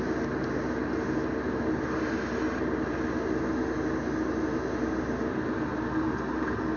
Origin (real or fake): real